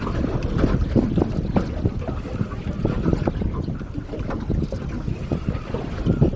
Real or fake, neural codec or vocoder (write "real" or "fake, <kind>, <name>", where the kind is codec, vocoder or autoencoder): real